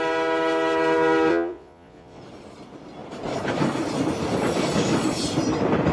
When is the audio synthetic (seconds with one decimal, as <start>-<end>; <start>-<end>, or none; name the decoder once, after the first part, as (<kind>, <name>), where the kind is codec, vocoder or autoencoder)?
1.3-2.2 (vocoder, Vocos)